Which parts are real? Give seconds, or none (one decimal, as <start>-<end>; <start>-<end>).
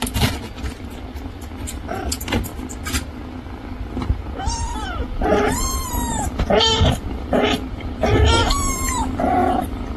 2.5-4.4